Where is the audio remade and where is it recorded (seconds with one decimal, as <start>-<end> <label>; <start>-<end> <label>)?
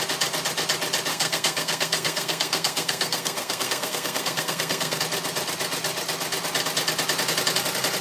0.0-1.1 recorded; 1.1-5.0 remade; 5.0-8.0 recorded